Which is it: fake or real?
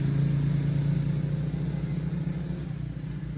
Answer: real